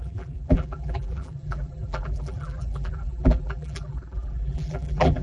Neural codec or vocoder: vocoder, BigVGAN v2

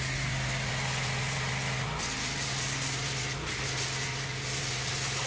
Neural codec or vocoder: none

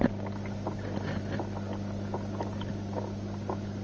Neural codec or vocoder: none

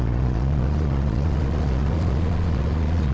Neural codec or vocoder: vocoder, Vocos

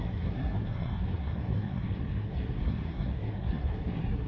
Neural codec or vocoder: codec, SNAC